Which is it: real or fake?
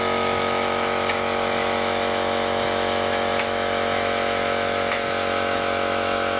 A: fake